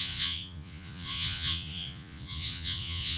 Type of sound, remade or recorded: remade